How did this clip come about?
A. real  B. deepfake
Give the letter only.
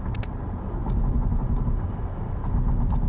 A